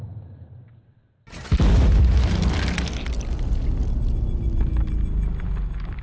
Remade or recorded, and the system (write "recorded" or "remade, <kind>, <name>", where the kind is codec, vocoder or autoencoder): recorded